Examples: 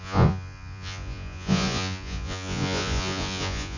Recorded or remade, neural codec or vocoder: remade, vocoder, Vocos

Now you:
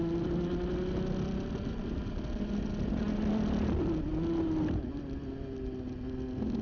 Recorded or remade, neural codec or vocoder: recorded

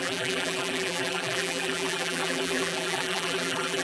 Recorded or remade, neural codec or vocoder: remade, vocoder, BigVGAN v2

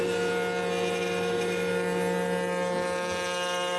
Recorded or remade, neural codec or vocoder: recorded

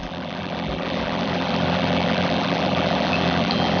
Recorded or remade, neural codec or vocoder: remade, vocoder, BigVGAN v2